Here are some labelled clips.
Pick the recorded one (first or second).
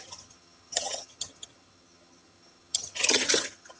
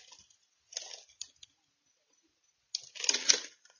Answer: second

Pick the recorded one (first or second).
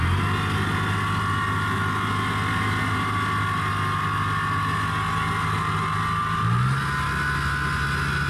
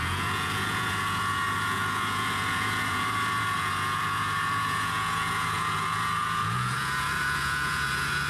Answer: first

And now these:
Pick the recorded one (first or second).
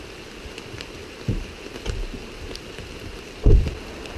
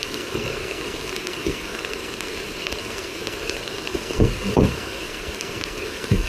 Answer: first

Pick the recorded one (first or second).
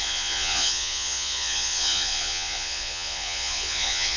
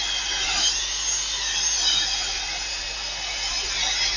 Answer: second